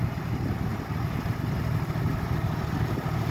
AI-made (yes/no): no